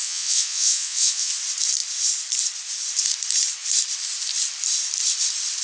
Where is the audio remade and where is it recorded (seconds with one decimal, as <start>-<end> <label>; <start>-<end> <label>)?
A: 0.0-1.3 remade; 1.3-5.6 recorded